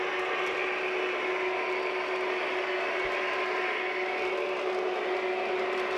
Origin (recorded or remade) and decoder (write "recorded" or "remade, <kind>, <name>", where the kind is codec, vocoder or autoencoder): recorded